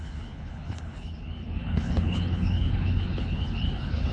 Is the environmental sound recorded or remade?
remade